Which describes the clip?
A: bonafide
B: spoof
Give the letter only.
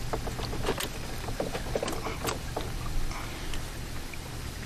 A